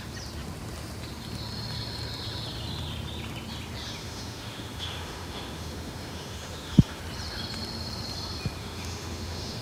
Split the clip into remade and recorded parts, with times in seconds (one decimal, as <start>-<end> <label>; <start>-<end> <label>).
0.0-4.0 recorded; 4.0-7.0 remade; 7.0-8.6 recorded; 8.6-9.6 remade